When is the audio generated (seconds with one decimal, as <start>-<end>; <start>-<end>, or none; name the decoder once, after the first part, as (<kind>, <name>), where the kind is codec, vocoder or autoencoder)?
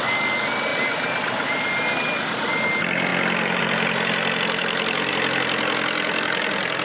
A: none